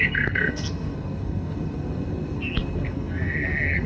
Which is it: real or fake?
fake